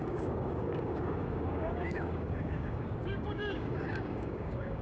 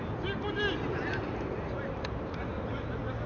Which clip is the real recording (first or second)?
second